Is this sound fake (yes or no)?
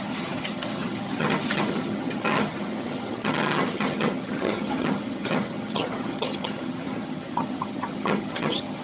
yes